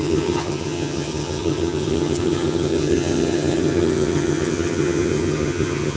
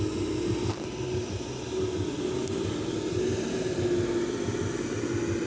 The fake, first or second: first